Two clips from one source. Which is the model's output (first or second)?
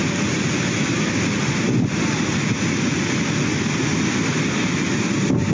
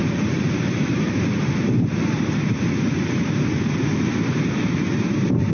second